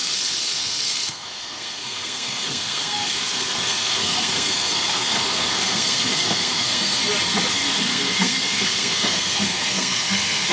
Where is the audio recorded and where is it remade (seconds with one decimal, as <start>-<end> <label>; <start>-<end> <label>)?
0.0-7.0 remade; 7.0-7.5 recorded; 7.5-10.5 remade